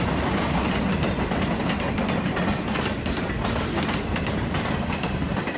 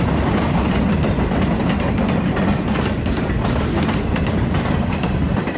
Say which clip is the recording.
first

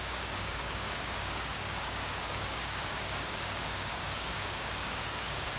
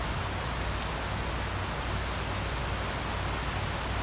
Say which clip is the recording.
second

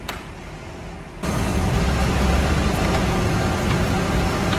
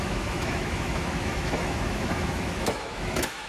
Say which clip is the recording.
first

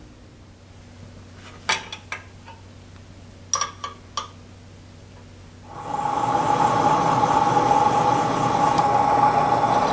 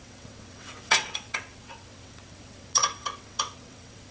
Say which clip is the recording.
first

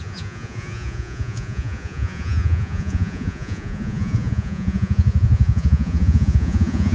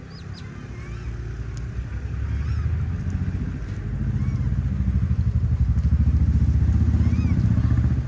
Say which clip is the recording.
second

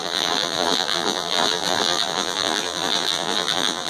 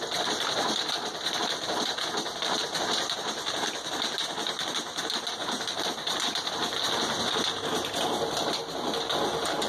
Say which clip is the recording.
second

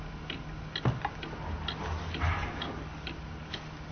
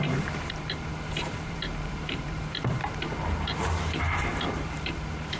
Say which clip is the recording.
first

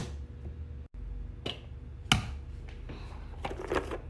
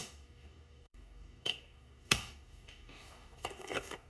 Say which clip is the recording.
first